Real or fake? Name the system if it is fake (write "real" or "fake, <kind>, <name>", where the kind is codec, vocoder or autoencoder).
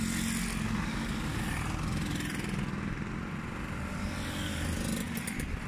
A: real